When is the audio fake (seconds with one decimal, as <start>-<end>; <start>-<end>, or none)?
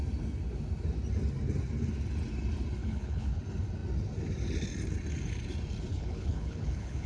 2.8-3.4; 5.9-7.1